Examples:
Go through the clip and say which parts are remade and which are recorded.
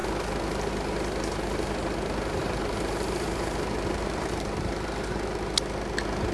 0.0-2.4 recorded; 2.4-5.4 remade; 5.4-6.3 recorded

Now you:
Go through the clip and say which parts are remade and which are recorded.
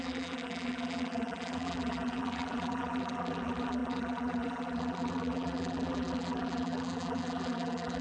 0.0-8.0 remade